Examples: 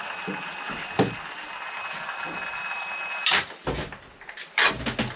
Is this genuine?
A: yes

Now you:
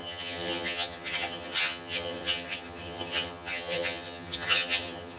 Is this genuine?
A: no